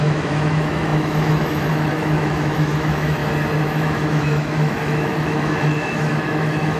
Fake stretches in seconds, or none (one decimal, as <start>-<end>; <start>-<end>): 0.0-3.2; 3.7-6.8